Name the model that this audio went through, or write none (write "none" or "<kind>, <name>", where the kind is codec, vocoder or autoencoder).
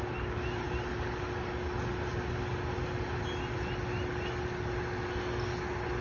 none